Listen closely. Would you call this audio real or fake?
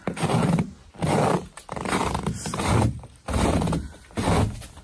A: real